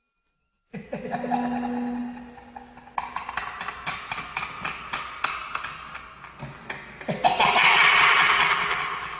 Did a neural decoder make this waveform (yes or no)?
no